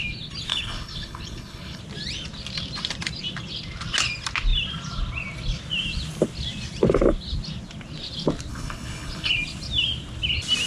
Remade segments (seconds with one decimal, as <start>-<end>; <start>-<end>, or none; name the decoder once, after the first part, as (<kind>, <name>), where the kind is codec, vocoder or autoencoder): 0.5-1.8 (codec, HILCodec); 8.5-9.3